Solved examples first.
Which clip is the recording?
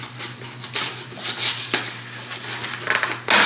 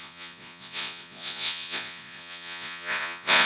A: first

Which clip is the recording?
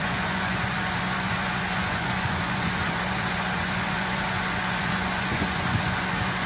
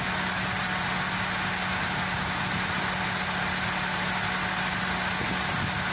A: second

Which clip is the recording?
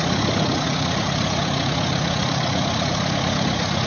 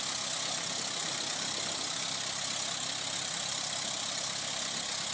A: second